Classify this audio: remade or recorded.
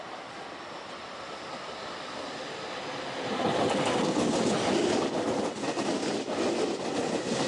recorded